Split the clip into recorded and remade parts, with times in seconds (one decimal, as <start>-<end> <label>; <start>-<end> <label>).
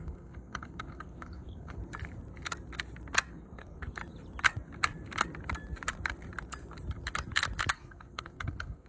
0.0-1.8 remade; 1.8-3.3 recorded; 3.3-4.0 remade; 4.0-7.7 recorded; 7.7-8.9 remade